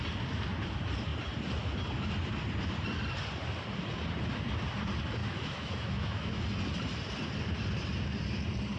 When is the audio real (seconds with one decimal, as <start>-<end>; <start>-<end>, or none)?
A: 0.0-5.2; 6.4-8.8